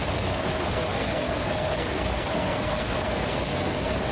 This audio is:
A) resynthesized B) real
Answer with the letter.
A